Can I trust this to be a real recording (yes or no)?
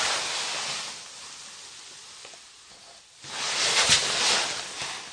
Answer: yes